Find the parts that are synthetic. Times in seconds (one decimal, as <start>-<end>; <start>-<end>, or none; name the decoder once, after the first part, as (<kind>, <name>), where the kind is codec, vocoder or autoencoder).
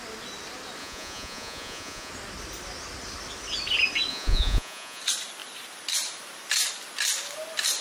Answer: 0.8-2.1 (vocoder, Vocos); 4.1-5.0